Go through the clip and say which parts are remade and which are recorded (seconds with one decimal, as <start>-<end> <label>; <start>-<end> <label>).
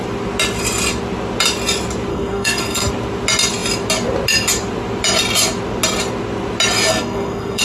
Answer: 0.0-2.1 recorded; 2.1-2.9 remade; 2.9-6.9 recorded; 6.9-7.6 remade